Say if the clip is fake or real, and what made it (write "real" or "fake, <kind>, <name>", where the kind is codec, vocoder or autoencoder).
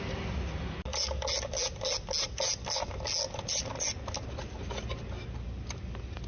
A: real